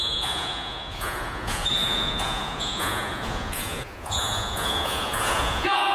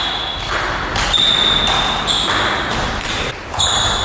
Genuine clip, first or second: second